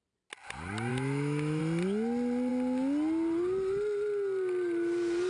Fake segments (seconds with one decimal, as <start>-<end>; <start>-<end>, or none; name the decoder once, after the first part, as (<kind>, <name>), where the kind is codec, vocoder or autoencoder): 0.9-1.6 (autoencoder, DAC-VAE)